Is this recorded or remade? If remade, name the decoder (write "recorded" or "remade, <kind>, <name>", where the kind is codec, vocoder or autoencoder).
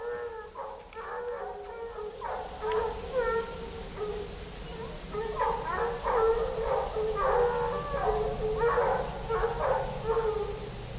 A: recorded